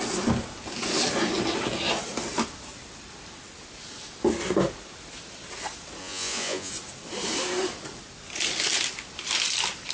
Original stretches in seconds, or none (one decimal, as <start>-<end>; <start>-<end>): 0.0-6.0; 6.7-9.9